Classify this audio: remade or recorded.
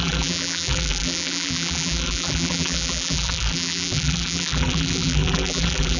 remade